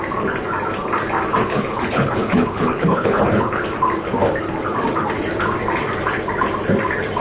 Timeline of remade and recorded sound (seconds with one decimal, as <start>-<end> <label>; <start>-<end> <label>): 0.0-1.4 recorded; 1.4-3.6 remade; 3.6-7.2 recorded